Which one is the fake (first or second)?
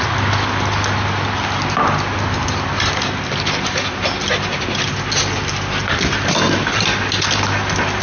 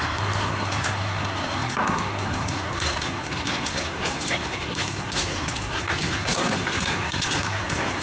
second